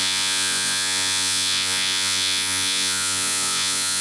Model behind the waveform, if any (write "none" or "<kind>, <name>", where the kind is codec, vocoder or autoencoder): vocoder, Vocos